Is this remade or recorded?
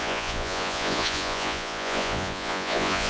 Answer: remade